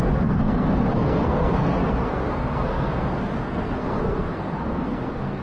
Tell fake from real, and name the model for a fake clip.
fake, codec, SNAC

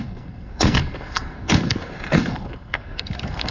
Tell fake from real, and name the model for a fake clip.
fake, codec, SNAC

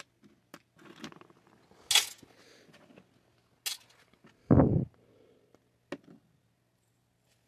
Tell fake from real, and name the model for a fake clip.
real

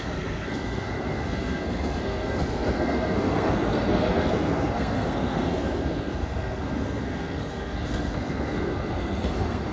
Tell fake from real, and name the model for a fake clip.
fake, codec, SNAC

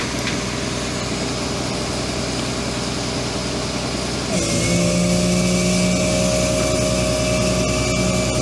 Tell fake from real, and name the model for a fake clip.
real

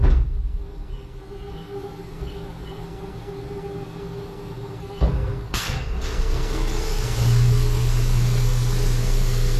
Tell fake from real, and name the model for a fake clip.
fake, codec, SNAC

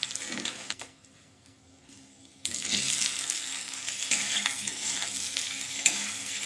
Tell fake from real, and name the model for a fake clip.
fake, codec, SNAC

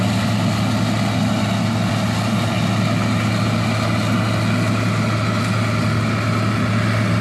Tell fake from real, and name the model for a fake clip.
real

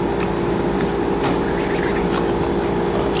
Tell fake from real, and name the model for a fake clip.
real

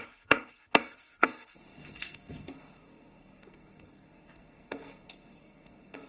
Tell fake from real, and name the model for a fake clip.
fake, codec, SNAC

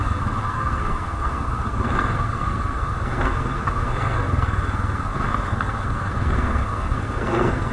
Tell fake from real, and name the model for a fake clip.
fake, codec, SNAC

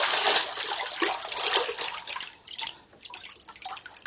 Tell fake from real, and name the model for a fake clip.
real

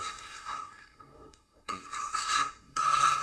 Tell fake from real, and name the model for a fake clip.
fake, codec, SNAC